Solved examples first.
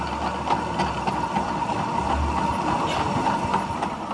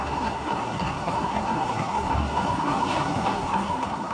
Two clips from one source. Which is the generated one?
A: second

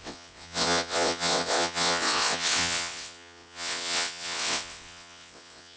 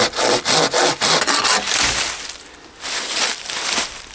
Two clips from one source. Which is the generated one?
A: first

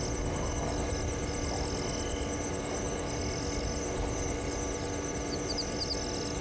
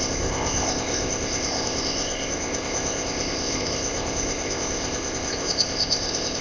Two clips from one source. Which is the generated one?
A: second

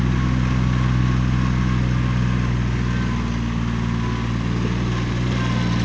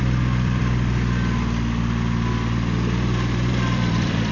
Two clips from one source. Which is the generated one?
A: second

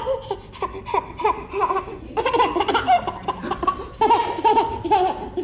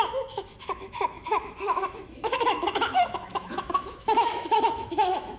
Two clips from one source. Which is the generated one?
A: second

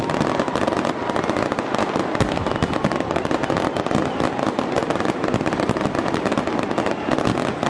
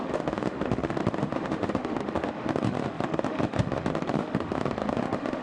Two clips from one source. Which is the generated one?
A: second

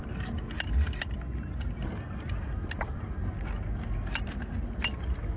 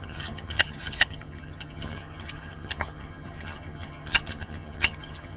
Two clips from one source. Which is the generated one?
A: second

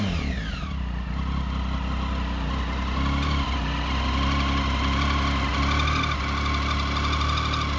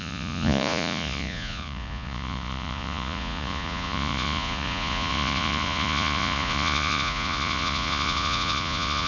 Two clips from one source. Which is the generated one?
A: second